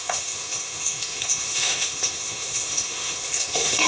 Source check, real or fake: fake